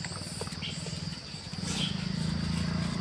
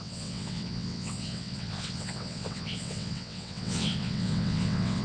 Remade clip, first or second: second